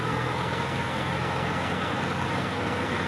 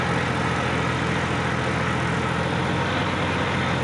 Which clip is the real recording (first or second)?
second